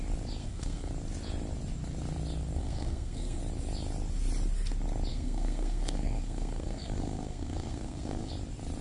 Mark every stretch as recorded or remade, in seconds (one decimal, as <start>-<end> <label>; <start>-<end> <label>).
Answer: 0.0-0.4 recorded; 0.4-0.9 remade; 0.9-2.6 recorded; 2.6-3.4 remade; 3.4-5.1 recorded; 5.1-8.3 remade; 8.3-8.8 recorded